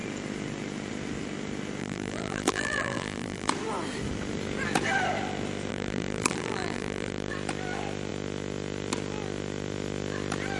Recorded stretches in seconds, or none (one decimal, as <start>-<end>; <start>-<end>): 0.0-1.8; 3.5-5.7; 7.3-10.6